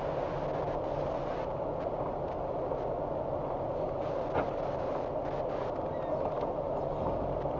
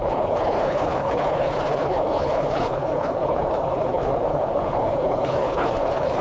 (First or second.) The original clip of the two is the first